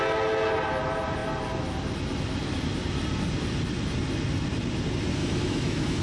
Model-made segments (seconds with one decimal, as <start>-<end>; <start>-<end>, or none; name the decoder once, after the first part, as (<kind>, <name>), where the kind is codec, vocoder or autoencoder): 5.2-6.0 (autoencoder, DAC-VAE)